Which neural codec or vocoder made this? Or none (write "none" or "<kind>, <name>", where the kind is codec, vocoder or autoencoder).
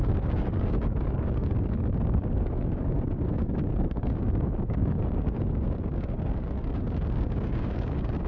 codec, DAC